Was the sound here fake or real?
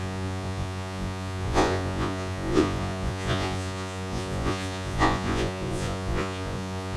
fake